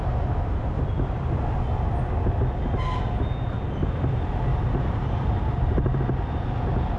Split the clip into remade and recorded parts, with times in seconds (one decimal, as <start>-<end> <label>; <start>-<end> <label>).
0.0-4.5 recorded; 4.5-6.0 remade; 6.0-7.0 recorded